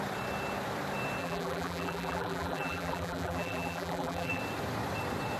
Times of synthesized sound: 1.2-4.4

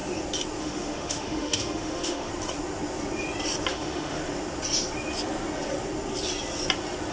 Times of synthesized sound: 0.6-2.3; 3.7-4.2